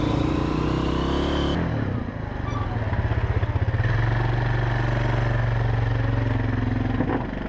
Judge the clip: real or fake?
real